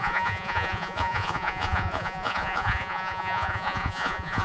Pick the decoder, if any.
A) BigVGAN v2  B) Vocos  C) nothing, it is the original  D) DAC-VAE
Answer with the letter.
B